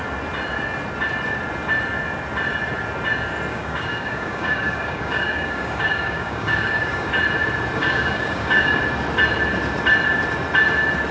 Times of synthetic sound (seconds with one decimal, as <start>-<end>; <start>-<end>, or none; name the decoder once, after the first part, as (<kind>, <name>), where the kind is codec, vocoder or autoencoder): 3.5-7.1 (codec, DAC); 7.8-8.8